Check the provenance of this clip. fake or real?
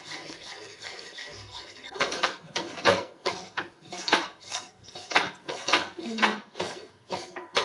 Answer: fake